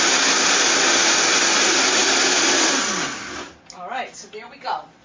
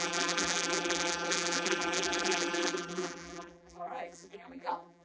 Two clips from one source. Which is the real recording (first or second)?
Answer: first